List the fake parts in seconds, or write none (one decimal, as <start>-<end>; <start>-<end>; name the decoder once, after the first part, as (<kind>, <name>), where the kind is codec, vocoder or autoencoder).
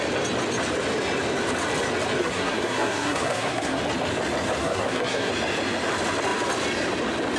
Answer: 2.2-3.8 (codec, SNAC); 4.6-5.3